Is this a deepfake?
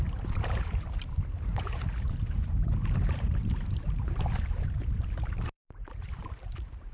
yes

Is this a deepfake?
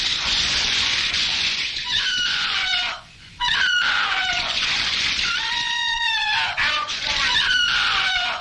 yes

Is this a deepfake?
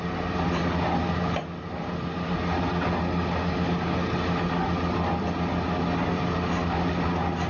no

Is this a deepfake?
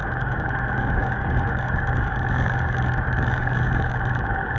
yes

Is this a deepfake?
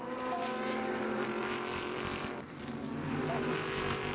yes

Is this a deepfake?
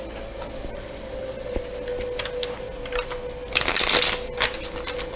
no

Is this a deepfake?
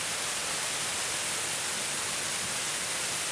no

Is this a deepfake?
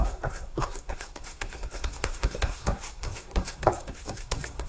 yes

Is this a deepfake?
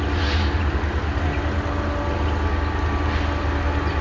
no